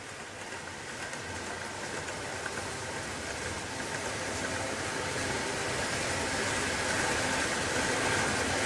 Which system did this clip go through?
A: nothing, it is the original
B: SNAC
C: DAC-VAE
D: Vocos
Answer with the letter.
A